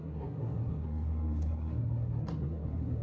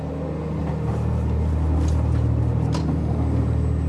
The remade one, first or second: first